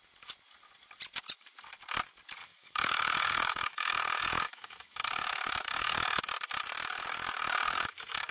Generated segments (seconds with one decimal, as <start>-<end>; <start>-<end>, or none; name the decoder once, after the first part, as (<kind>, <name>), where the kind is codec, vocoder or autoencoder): 2.4-6.2 (autoencoder, DAC-VAE); 7.6-8.3